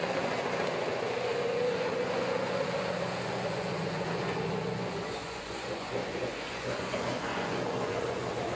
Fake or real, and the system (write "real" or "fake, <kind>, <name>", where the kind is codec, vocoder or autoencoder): fake, vocoder, Vocos